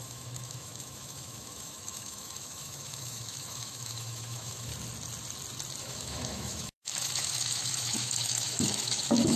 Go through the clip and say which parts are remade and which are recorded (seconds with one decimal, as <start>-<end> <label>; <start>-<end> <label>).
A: 0.0-4.7 remade; 4.7-5.8 recorded; 5.8-9.4 remade